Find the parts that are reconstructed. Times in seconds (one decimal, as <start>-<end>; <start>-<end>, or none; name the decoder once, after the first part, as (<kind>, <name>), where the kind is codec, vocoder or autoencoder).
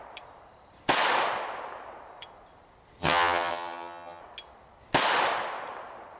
3.0-4.2 (vocoder, HiFi-GAN)